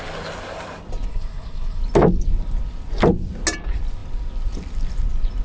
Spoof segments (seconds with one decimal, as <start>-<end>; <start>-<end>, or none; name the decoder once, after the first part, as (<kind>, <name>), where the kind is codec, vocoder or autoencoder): 1.1-1.8 (codec, SNAC)